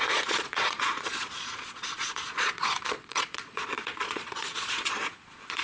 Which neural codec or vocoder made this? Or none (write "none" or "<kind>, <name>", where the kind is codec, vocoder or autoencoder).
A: vocoder, Vocos